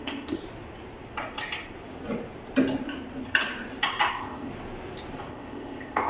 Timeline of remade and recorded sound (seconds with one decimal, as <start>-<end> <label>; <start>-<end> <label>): 0.0-0.4 remade; 0.4-4.1 recorded; 4.1-4.5 remade; 4.5-5.3 recorded; 5.3-6.1 remade